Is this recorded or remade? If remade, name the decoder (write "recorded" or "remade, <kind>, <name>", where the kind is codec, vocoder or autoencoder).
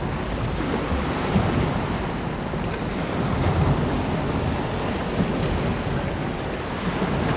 recorded